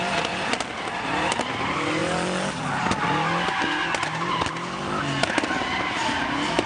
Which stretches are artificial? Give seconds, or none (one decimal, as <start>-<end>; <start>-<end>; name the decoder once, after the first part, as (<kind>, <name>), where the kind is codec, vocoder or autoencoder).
none